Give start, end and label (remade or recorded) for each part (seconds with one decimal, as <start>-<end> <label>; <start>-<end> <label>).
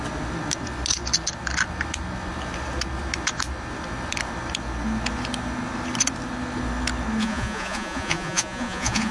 0.0-7.2 recorded; 7.2-9.1 remade